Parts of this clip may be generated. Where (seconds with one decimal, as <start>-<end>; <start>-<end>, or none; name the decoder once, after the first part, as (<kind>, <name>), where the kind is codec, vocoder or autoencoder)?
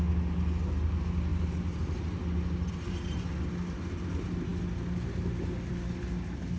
none